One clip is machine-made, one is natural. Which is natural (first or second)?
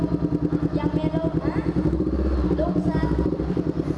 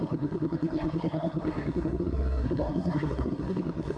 first